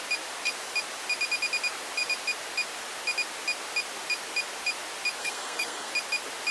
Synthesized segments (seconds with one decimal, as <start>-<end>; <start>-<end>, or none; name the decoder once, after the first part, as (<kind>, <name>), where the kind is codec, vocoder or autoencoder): 5.2-5.9 (codec, SNAC)